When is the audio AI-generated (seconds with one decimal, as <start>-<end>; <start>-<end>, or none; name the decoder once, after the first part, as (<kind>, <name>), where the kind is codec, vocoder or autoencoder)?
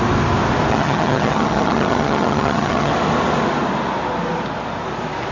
0.7-2.9 (vocoder, HiFi-GAN)